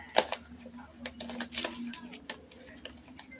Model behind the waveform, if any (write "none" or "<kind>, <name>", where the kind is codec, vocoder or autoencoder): none